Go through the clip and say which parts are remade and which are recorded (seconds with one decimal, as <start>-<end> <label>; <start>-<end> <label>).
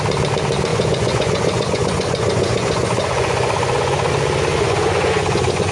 0.0-0.7 recorded; 0.7-4.1 remade; 4.1-4.5 recorded; 4.5-5.7 remade